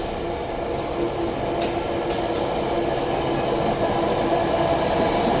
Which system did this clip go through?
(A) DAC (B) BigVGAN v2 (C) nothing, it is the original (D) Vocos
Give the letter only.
C